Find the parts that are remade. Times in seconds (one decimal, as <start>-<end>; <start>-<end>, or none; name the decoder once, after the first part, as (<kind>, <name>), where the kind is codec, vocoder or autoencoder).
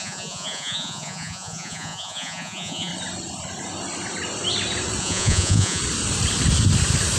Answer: 0.0-2.9 (vocoder, Vocos); 5.0-5.8